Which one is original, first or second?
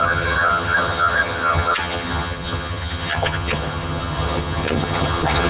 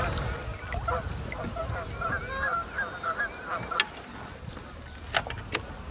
second